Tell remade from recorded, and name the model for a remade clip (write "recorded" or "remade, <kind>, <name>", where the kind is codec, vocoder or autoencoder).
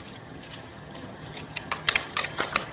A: remade, vocoder, HiFi-GAN